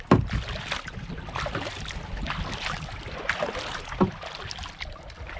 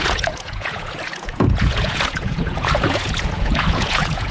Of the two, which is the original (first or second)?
first